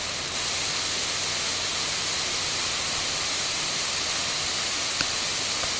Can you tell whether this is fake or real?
real